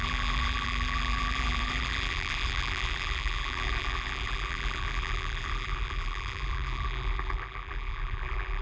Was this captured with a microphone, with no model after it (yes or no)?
no